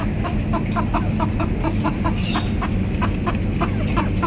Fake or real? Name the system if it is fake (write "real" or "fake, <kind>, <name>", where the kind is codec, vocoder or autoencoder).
real